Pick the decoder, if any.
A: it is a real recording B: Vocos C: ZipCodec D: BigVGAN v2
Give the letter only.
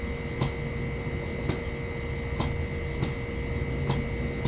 A